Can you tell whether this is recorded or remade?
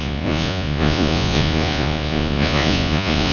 remade